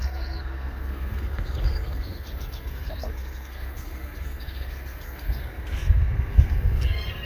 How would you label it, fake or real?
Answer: fake